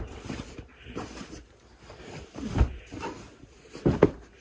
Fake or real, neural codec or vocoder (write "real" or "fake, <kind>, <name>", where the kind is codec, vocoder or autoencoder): real